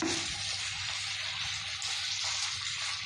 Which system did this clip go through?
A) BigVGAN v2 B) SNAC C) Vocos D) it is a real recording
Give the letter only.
D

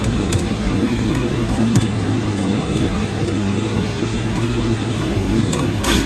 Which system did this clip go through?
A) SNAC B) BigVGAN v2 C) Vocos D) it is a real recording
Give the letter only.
A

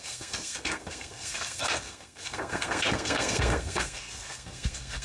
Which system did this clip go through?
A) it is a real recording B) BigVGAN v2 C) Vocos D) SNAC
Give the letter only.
D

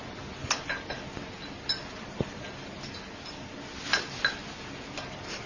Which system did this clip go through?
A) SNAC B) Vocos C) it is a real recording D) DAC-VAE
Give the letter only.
C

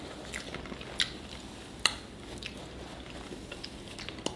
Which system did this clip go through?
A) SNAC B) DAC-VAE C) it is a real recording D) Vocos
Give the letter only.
C